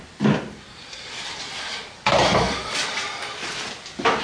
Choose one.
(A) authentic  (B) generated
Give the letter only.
A